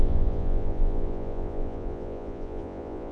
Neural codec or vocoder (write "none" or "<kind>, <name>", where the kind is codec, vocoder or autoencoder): vocoder, Vocos